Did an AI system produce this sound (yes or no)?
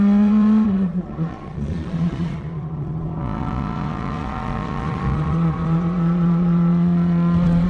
yes